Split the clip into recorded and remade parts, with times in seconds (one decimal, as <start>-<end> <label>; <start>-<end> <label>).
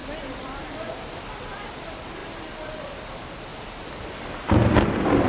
0.0-5.3 recorded